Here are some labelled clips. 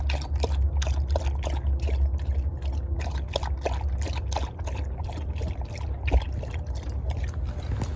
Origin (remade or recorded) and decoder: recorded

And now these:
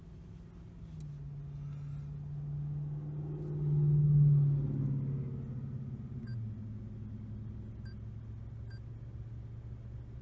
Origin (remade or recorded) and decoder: recorded